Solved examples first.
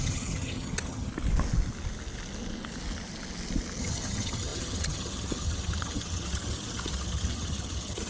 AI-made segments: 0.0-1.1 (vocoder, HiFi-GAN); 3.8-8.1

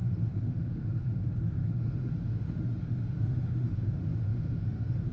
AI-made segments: 0.0-5.1 (autoencoder, DAC-VAE)

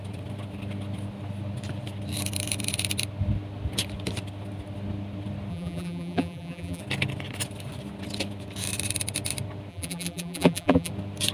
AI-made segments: 5.5-6.8 (vocoder, BigVGAN v2); 9.7-10.9

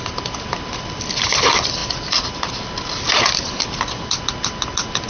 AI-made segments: none